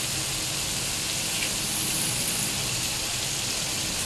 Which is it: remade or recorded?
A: recorded